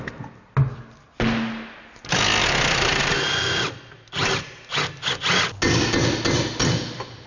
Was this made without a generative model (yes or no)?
yes